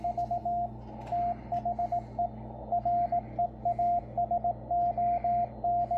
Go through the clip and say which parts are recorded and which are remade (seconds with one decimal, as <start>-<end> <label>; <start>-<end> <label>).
0.0-6.0 recorded